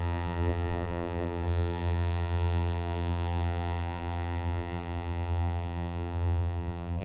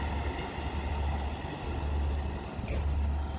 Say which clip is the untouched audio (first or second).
second